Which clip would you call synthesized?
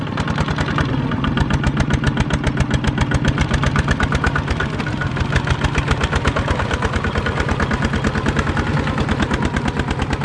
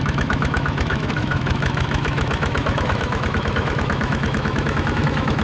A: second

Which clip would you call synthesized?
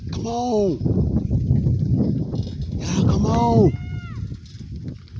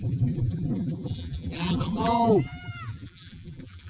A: second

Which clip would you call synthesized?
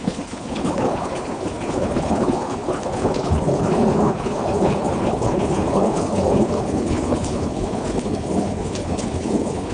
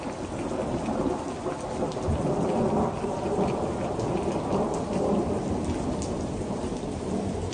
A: first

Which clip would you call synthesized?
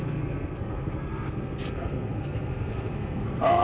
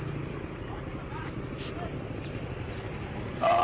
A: first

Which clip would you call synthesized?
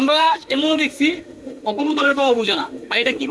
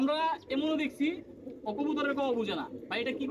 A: first